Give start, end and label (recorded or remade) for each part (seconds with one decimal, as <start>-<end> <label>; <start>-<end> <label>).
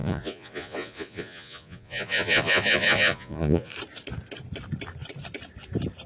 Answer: 0.0-3.7 remade; 3.7-6.1 recorded